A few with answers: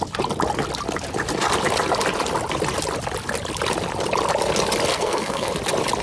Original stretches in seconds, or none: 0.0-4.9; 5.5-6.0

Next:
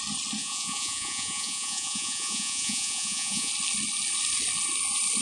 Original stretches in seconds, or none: 0.0-0.4; 3.5-5.2

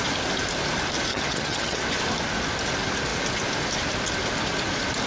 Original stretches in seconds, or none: 0.0-1.1; 1.8-5.1

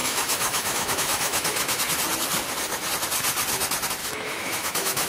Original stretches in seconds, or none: 1.8-4.0